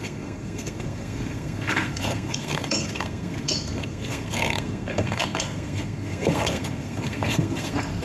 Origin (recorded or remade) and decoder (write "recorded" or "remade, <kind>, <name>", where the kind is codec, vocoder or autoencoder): remade, codec, SNAC